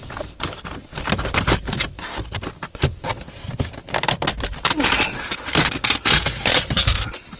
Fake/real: real